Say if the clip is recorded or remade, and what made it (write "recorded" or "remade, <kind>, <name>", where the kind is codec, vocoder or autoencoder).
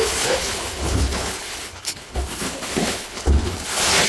remade, codec, HILCodec